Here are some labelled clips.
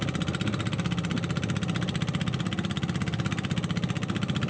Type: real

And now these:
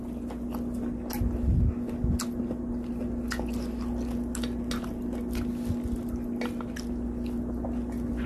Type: real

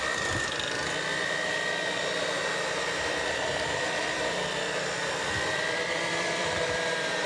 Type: fake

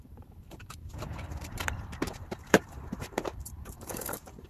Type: fake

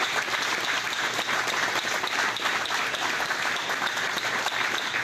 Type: real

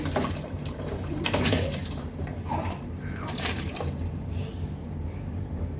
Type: fake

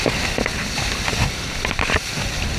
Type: real